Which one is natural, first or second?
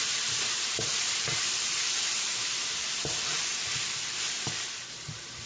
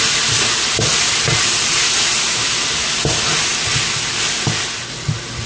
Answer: second